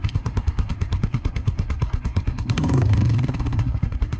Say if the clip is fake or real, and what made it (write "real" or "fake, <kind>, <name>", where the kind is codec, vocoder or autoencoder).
fake, codec, SNAC